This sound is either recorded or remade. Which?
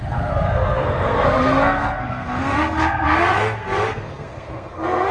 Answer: remade